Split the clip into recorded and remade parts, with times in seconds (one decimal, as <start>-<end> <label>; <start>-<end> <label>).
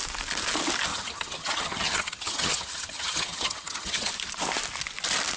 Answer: 0.0-0.9 recorded; 0.9-4.1 remade; 4.1-5.4 recorded